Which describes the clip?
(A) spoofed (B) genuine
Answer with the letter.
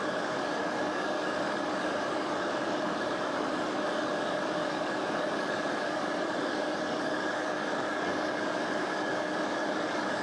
A